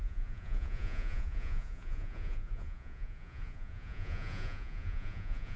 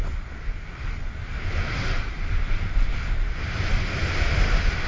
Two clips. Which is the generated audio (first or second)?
first